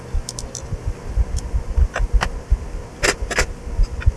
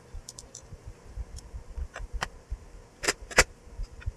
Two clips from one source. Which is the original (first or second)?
first